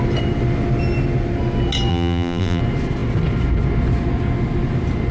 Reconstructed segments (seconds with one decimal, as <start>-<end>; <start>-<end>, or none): 1.9-2.6